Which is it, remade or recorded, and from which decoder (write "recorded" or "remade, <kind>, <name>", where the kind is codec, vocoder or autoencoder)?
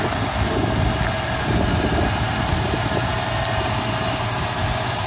recorded